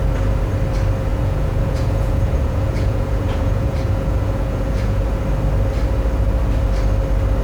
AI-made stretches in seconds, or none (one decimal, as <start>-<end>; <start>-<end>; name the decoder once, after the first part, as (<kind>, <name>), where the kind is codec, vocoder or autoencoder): 1.1-5.2 (vocoder, Vocos)